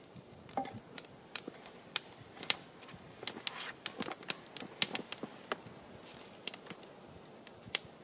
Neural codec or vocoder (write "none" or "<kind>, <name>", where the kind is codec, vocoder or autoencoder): none